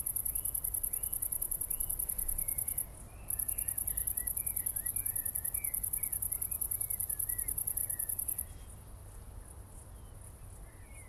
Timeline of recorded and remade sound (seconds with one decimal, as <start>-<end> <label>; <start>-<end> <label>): 0.0-11.1 recorded